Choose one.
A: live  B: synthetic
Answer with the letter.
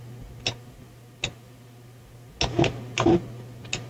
A